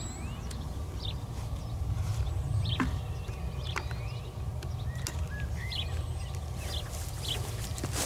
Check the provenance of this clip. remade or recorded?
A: recorded